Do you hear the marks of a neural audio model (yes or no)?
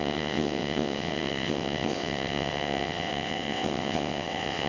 yes